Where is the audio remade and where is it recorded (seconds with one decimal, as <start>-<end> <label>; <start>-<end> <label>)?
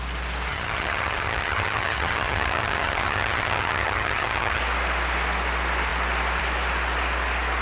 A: 0.0-0.5 recorded; 0.5-4.6 remade; 4.6-7.6 recorded